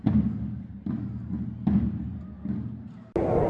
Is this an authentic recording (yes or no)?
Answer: yes